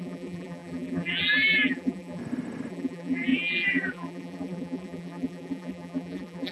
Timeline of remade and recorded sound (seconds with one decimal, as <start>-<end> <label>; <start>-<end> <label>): 0.0-2.2 remade; 2.2-2.7 recorded; 2.7-6.5 remade